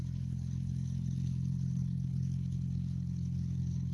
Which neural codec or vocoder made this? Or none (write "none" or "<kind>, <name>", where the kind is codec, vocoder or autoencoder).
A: codec, HILCodec